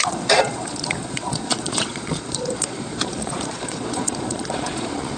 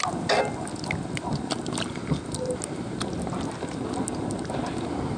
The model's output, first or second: first